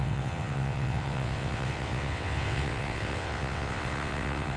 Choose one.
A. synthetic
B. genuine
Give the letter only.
A